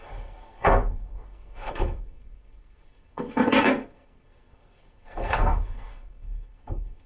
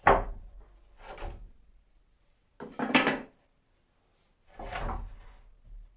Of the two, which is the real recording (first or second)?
second